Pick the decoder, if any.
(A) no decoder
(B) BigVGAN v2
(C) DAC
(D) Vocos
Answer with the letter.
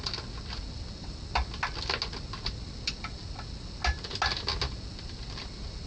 A